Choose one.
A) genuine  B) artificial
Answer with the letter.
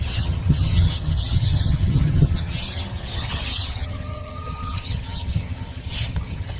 B